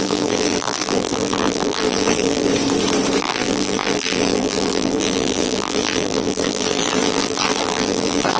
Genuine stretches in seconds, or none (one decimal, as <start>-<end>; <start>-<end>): 2.5-3.2